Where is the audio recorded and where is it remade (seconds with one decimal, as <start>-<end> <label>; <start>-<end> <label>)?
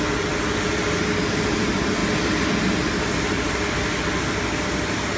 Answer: 0.0-5.2 recorded